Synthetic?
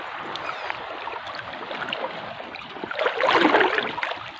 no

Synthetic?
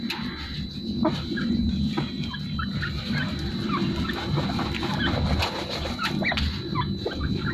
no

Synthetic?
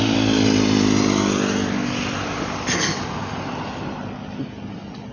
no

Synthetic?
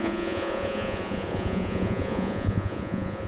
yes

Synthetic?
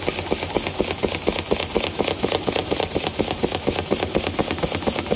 no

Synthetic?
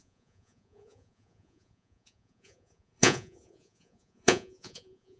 yes